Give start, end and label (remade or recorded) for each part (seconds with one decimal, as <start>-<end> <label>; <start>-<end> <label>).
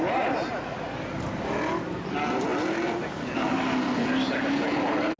0.0-5.2 recorded